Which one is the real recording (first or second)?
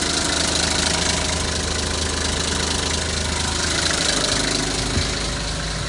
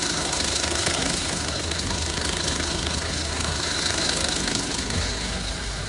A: first